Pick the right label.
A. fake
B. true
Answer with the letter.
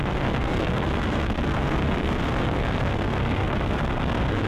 A